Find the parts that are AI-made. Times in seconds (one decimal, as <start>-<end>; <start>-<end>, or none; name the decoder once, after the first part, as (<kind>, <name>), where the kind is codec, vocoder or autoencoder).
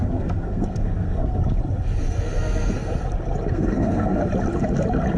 0.0-1.4 (codec, SNAC); 2.0-2.9; 3.5-4.2